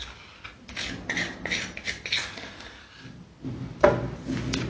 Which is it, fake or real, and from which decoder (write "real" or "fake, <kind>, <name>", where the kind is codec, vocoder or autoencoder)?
real